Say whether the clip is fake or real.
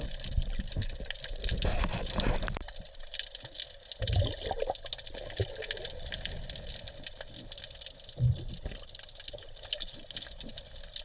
real